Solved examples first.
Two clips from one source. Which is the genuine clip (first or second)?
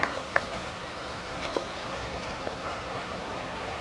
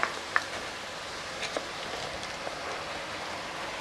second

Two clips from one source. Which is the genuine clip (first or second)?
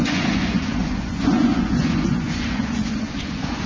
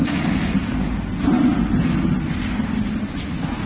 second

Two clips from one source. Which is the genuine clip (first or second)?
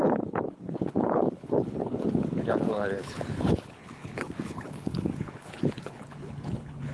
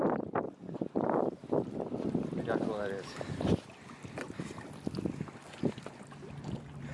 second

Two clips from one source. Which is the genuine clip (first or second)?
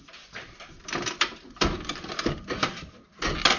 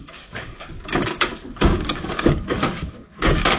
first